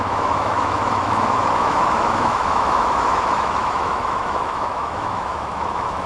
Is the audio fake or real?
fake